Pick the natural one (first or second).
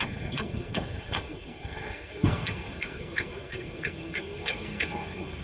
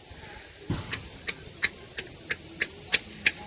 second